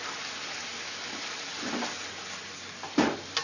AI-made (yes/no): no